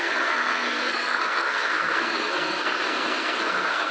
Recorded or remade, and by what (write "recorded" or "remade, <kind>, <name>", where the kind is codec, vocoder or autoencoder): remade, codec, SNAC